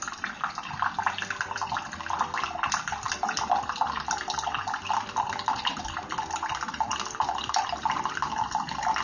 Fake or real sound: fake